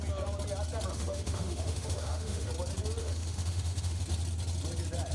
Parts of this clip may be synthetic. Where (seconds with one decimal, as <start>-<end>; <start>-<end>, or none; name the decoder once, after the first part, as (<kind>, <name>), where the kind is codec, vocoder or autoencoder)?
0.9-2.5 (autoencoder, DAC-VAE); 3.0-4.0